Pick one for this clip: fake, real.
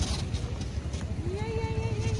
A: real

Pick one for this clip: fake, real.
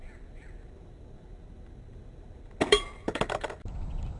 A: real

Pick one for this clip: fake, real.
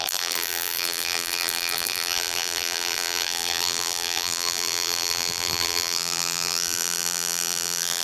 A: fake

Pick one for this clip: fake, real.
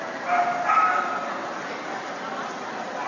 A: real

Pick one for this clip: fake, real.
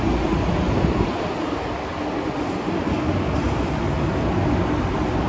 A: real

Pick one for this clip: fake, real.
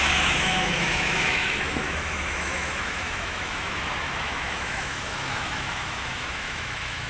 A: fake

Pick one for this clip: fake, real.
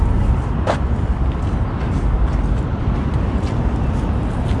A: real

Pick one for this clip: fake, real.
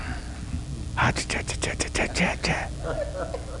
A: real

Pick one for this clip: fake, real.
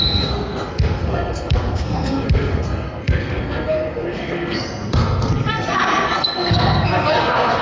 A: fake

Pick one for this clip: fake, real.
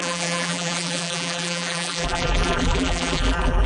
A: fake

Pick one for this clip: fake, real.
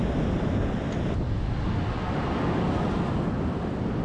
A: real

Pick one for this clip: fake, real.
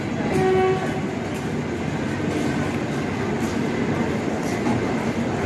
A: real